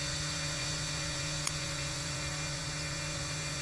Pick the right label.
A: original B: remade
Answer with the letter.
B